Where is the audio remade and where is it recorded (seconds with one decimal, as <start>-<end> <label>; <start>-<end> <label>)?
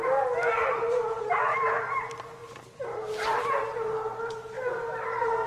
0.0-5.5 recorded